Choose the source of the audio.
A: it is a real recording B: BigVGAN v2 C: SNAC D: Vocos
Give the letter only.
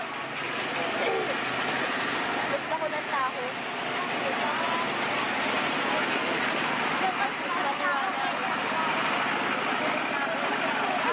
A